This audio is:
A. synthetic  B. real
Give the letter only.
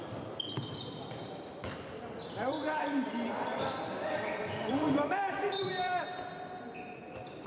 A